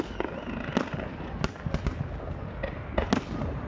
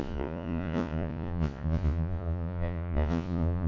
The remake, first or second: second